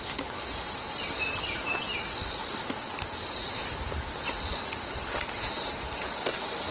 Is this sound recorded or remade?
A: recorded